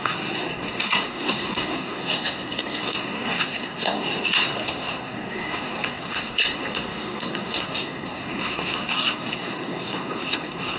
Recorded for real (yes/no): no